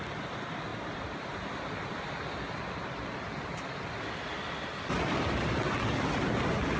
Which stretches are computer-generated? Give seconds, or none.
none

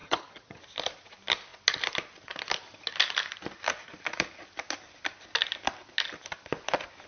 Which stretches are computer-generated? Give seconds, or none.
0.0-0.6

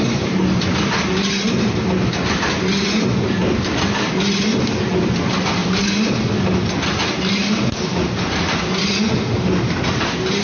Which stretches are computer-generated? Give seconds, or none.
none

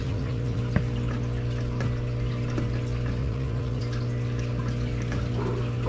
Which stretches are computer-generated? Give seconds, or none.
0.0-0.6; 3.2-3.8

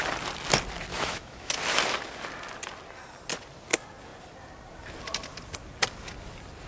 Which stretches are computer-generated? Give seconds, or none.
0.9-1.5

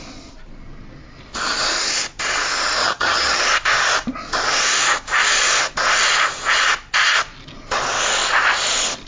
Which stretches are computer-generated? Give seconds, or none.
2.8-3.4

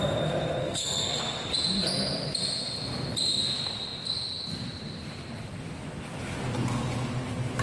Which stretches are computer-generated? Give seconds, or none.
0.6-1.2